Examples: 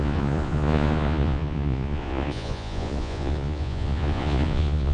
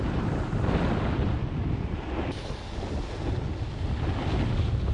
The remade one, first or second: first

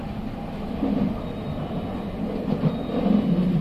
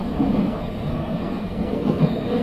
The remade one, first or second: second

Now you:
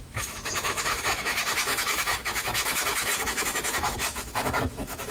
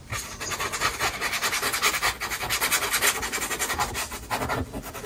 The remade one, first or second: first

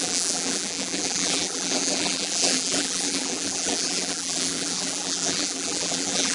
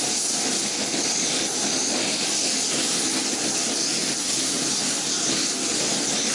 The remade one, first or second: first